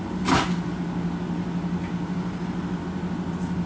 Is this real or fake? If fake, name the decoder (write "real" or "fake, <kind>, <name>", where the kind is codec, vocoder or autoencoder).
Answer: real